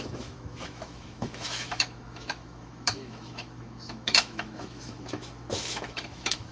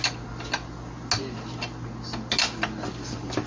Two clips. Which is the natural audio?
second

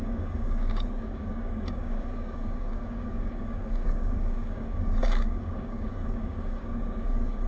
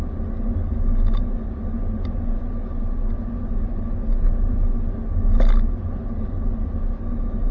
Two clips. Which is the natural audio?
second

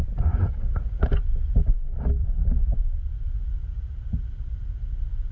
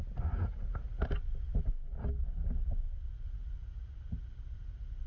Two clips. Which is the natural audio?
second